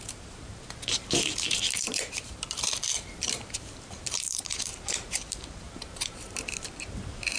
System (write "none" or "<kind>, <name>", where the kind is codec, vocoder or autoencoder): vocoder, BigVGAN v2